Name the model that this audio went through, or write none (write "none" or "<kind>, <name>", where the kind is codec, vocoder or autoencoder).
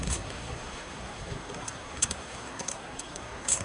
codec, SNAC